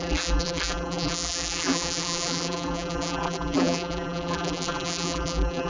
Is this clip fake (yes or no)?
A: yes